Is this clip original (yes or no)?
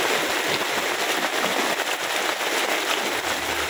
yes